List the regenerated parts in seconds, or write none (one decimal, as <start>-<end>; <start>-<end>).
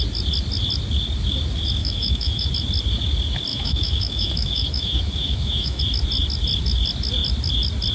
1.8-2.5; 3.5-5.8